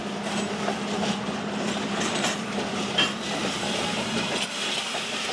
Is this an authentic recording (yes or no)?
yes